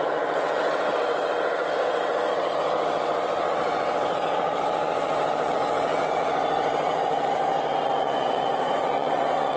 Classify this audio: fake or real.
fake